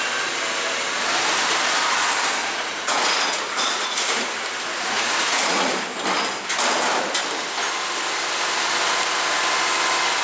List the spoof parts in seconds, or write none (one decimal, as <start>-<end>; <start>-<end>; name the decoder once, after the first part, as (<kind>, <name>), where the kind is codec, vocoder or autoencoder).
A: 2.4-4.3 (vocoder, Vocos); 4.7-5.7